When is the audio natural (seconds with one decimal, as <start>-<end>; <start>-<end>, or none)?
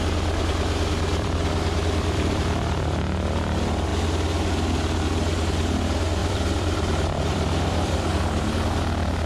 0.0-1.1; 2.4-6.2; 8.5-9.3